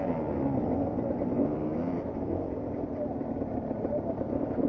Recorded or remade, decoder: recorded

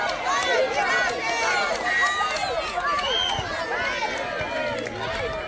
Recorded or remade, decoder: recorded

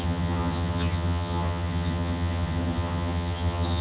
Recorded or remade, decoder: remade, vocoder, HiFi-GAN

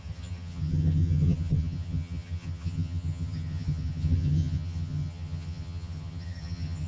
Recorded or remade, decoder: remade, vocoder, HiFi-GAN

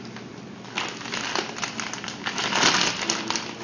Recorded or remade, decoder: recorded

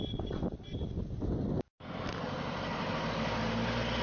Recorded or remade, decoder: recorded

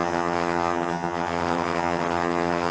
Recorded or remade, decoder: remade, vocoder, HiFi-GAN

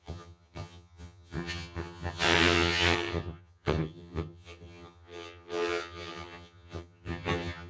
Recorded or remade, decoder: remade, vocoder, HiFi-GAN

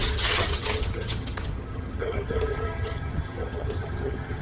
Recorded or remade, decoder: remade, vocoder, HiFi-GAN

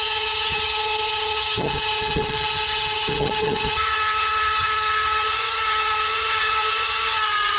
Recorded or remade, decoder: remade, vocoder, HiFi-GAN